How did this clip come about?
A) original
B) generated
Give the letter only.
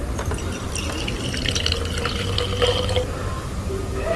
A